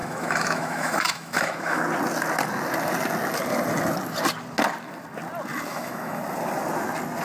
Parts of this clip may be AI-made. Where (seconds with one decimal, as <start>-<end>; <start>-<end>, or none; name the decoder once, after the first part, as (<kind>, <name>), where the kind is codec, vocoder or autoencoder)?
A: 0.0-1.8 (autoencoder, DAC-VAE); 5.7-6.2